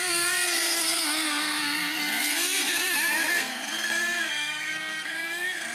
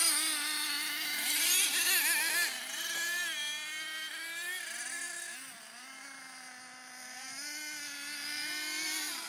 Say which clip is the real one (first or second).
second